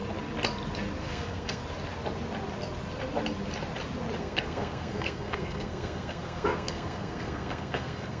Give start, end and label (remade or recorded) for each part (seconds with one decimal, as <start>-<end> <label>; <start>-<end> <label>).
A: 0.0-1.0 recorded; 1.0-1.6 remade; 1.6-4.2 recorded; 4.2-8.2 remade